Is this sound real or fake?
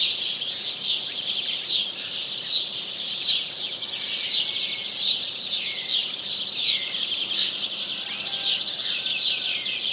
fake